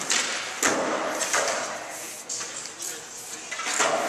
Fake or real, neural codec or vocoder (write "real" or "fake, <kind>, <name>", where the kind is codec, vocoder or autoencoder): real